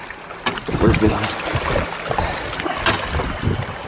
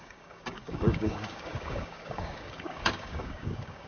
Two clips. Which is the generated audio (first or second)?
second